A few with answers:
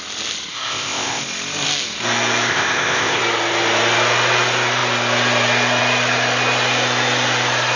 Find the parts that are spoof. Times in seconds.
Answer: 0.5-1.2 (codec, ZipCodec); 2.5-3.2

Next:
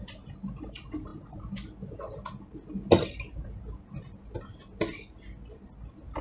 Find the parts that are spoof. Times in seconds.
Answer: none

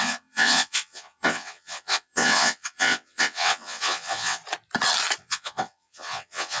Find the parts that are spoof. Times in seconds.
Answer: 0.0-4.4 (vocoder, WaveNeXt); 5.2-6.6

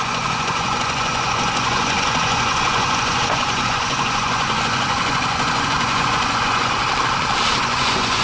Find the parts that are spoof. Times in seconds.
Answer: 0.0-6.8 (vocoder, Vocos); 7.6-8.2

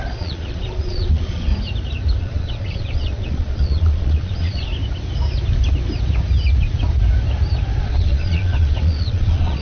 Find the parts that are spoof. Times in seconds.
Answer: 0.0-1.5 (vocoder, Vocos); 2.2-4.7; 7.8-9.6

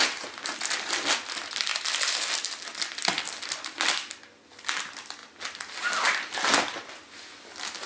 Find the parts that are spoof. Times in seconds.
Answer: none

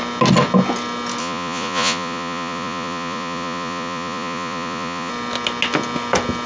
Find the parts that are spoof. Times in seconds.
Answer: 1.2-5.1 (vocoder, Vocos)

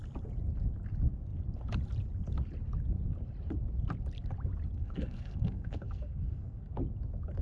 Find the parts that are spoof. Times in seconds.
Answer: 4.8-6.7 (codec, SNAC)